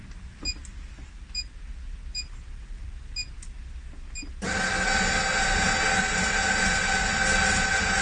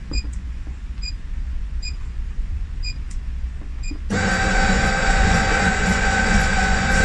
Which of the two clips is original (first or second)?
first